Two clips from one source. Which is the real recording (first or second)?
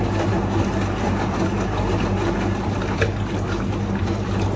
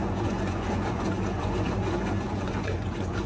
first